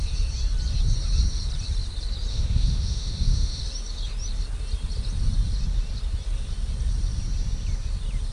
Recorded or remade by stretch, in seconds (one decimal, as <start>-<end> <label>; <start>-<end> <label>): 0.0-2.3 recorded; 2.3-3.6 remade; 3.6-8.3 recorded